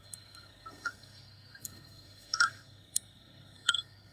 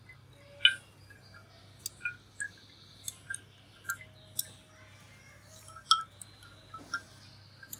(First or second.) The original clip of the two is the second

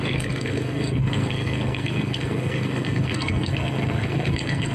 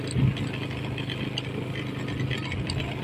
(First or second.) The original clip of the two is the second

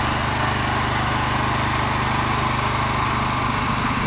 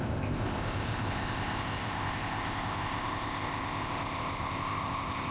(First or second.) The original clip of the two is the first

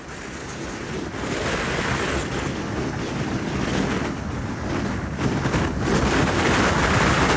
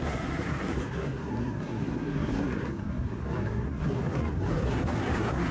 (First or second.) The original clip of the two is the first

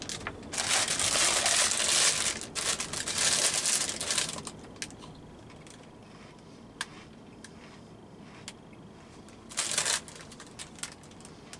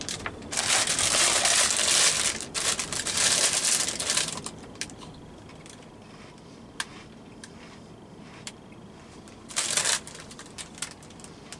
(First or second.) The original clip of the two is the first